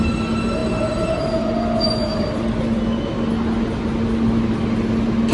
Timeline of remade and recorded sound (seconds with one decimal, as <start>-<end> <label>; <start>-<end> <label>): 0.0-5.3 recorded